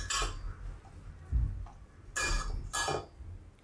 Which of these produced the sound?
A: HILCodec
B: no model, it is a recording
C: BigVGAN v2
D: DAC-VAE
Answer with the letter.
B